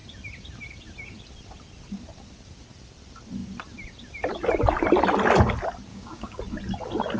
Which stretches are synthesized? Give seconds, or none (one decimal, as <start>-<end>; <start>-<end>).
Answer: 5.9-6.4